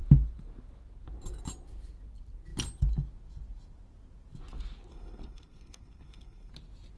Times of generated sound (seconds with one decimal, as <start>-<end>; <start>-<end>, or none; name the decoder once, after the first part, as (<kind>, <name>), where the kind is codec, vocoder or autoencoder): 4.9-6.5 (codec, SNAC)